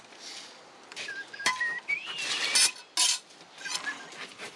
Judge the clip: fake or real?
real